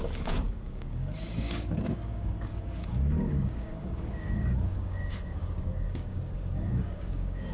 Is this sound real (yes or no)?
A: no